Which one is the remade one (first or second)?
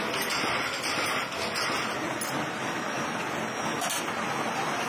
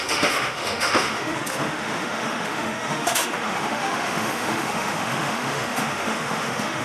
second